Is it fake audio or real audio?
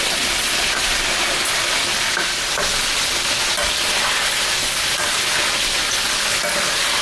fake